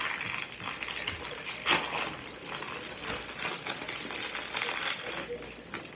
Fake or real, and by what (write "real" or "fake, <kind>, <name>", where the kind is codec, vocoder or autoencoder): real